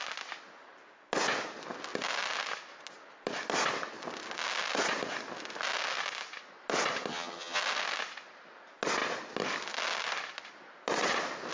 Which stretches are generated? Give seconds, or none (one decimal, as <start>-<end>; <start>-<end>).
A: 7.1-7.6

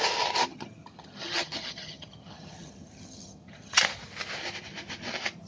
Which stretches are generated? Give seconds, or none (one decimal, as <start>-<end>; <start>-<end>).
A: 0.5-3.8

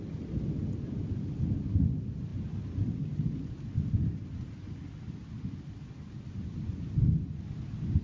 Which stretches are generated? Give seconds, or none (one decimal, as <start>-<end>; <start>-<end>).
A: none

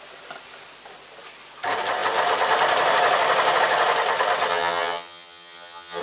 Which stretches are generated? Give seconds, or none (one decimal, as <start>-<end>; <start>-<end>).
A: 4.5-6.0